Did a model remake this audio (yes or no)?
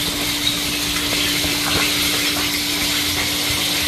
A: yes